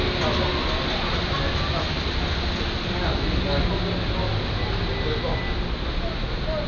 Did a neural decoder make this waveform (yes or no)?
no